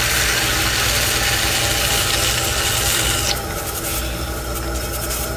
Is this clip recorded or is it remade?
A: recorded